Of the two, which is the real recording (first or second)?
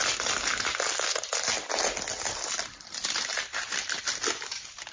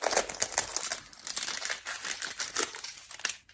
second